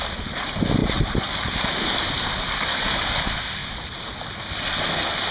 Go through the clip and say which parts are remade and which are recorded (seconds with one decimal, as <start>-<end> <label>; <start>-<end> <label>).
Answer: 0.0-0.8 recorded; 0.8-2.5 remade; 2.5-5.3 recorded